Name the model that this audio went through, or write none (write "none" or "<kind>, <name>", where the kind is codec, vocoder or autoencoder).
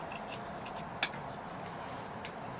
none